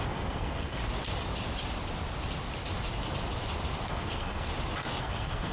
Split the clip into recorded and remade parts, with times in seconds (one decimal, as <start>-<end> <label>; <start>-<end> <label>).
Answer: 0.0-0.8 remade; 0.8-3.9 recorded; 3.9-4.5 remade; 4.5-5.0 recorded; 5.0-5.5 remade